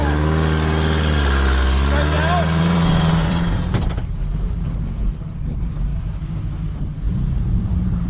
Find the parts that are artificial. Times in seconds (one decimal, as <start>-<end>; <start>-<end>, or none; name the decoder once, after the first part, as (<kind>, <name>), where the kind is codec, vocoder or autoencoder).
2.6-5.9 (vocoder, BigVGAN v2); 6.8-8.1

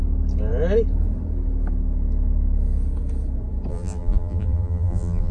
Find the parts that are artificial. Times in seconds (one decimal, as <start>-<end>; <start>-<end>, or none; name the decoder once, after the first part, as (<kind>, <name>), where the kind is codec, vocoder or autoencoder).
3.7-5.3 (vocoder, BigVGAN v2)

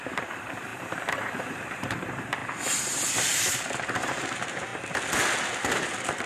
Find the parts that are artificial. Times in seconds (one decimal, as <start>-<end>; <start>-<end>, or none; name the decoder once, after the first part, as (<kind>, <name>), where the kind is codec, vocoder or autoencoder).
0.0-2.4 (vocoder, BigVGAN v2); 3.1-4.7; 5.6-6.3

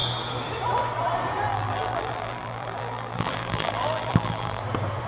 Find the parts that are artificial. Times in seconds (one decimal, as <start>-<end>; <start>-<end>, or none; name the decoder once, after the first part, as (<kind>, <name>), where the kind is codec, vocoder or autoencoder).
1.5-4.6 (vocoder, BigVGAN v2)

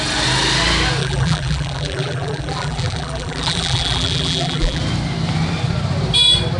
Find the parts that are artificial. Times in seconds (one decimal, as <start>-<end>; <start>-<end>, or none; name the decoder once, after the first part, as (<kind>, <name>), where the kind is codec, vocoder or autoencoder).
1.0-4.8 (vocoder, BigVGAN v2)

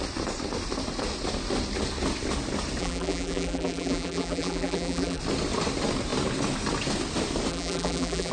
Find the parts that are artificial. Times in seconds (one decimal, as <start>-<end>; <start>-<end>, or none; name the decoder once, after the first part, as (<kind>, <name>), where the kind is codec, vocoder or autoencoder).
2.8-5.2 (vocoder, BigVGAN v2); 7.5-8.3

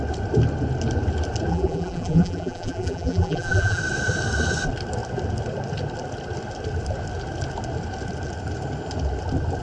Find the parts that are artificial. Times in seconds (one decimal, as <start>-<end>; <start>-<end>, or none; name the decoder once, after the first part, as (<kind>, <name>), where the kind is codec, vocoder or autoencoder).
1.5-3.8 (vocoder, BigVGAN v2)